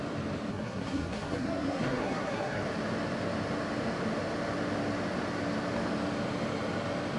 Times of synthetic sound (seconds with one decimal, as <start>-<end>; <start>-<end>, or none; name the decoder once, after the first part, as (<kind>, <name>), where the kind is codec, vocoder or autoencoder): 0.5-2.6 (codec, SNAC)